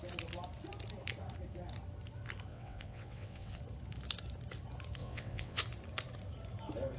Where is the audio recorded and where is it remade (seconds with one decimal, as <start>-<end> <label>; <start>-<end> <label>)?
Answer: 0.0-2.5 recorded; 2.5-3.6 remade; 3.6-5.0 recorded; 5.0-5.6 remade; 5.6-7.0 recorded

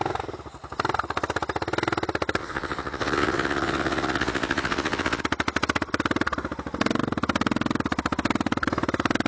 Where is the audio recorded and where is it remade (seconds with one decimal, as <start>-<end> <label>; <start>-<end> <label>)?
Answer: 0.0-2.4 recorded; 2.4-5.2 remade; 5.2-9.3 recorded

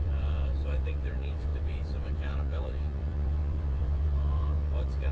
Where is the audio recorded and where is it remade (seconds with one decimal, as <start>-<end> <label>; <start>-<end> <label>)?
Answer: 0.0-5.1 remade